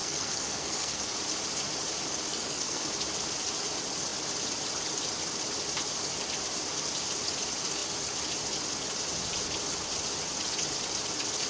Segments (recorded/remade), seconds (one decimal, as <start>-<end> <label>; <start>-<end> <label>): 0.0-1.1 remade; 1.1-2.3 recorded; 2.3-2.9 remade; 2.9-11.5 recorded